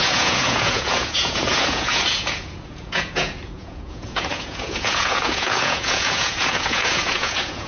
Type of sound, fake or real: fake